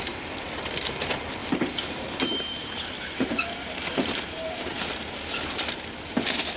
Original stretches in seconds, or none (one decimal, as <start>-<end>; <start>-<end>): 0.0-1.4; 4.6-6.6